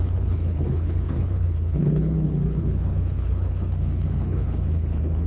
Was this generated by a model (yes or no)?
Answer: yes